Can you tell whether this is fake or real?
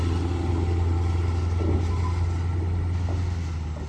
real